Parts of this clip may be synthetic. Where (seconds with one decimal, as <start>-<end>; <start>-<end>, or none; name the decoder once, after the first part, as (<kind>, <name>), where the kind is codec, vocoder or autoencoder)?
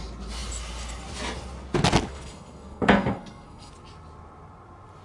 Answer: 2.1-3.7 (codec, SNAC)